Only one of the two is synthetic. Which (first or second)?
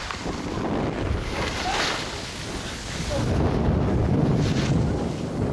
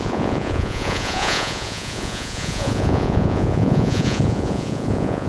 second